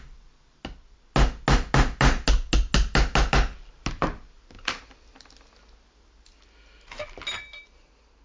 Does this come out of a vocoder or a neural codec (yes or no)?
no